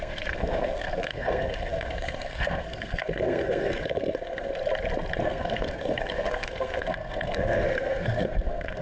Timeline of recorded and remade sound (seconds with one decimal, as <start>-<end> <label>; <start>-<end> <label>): 0.0-4.5 remade; 4.5-5.2 recorded; 5.2-8.8 remade